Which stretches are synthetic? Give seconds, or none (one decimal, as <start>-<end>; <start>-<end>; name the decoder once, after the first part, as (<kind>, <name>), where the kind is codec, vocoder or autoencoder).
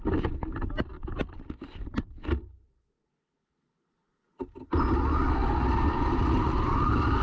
none